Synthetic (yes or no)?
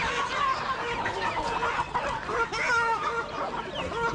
no